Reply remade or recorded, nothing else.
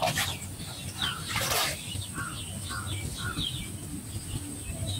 recorded